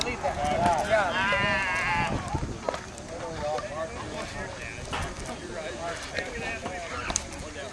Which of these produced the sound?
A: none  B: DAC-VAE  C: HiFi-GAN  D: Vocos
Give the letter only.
A